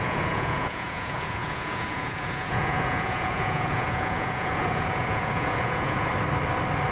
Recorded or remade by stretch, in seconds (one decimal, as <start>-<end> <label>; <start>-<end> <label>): 0.0-6.1 remade; 6.1-6.9 recorded